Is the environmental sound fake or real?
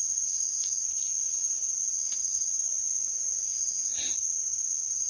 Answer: fake